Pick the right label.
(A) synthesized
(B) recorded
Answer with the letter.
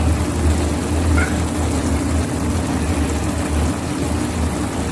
B